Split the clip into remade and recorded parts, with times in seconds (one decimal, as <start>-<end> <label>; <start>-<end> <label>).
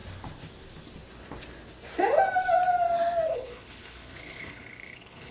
0.0-3.3 recorded; 3.3-5.3 remade